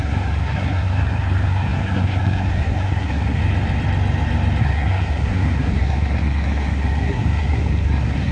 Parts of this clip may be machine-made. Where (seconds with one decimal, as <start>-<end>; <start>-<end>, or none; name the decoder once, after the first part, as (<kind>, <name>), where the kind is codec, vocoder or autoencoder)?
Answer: 0.0-3.4 (codec, SNAC); 4.6-8.3